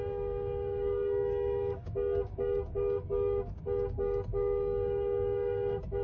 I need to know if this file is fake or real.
fake